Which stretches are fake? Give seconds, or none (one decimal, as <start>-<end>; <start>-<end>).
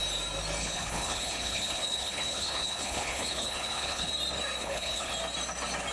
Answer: 0.6-4.1; 4.6-5.1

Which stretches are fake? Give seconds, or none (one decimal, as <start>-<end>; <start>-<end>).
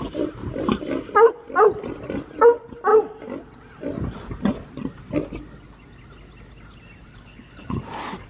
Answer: 7.1-7.8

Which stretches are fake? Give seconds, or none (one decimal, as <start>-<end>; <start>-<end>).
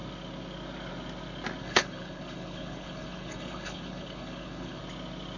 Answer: 1.6-4.8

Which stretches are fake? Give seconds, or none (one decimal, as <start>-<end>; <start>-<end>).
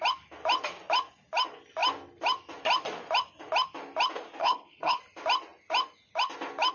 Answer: 4.4-5.0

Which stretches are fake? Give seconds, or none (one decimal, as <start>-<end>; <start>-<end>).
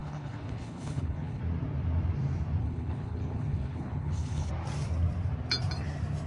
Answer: 0.0-1.4; 2.6-4.5